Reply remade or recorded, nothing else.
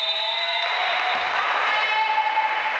remade